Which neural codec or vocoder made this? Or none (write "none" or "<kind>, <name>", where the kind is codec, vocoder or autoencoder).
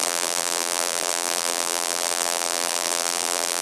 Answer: vocoder, BigVGAN v2